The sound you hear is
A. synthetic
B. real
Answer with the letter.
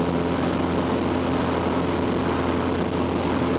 B